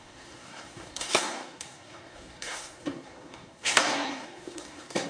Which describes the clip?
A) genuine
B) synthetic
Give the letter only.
B